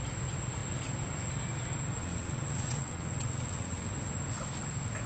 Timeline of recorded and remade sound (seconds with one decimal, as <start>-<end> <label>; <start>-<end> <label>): 0.0-2.0 recorded; 2.0-3.9 remade; 3.9-5.1 recorded